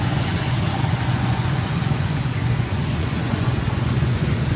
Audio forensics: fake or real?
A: fake